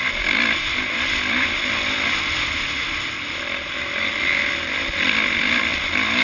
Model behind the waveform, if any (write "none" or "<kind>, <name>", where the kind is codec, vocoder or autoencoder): none